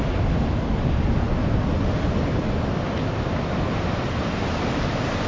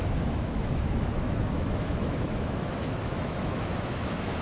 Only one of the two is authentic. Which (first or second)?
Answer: first